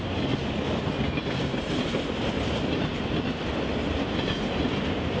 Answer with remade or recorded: recorded